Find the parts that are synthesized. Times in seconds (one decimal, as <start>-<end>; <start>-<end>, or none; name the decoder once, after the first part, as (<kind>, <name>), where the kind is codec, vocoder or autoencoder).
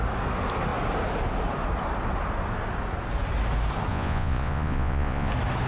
3.9-5.3 (vocoder, Vocos)